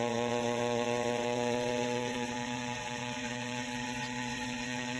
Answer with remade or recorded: remade